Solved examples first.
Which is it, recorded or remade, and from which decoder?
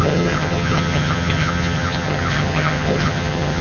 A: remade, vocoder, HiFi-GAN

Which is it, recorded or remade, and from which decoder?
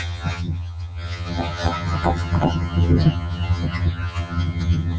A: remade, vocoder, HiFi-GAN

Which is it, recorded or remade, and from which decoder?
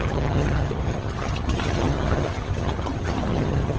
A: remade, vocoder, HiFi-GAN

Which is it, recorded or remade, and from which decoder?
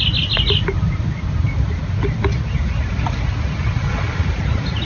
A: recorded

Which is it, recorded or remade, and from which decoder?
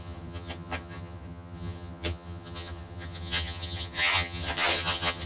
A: remade, vocoder, HiFi-GAN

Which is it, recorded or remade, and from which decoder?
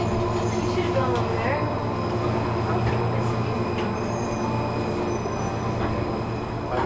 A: recorded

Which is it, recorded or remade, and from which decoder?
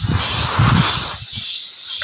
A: recorded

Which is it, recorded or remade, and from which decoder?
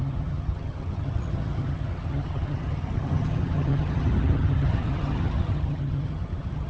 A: remade, vocoder, HiFi-GAN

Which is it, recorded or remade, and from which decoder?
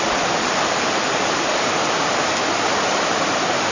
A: recorded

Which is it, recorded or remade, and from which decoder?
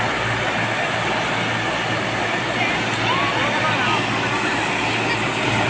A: recorded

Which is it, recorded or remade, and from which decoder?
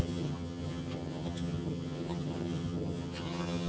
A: remade, vocoder, HiFi-GAN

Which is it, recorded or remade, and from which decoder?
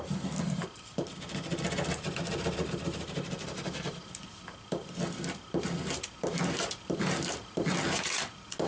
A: recorded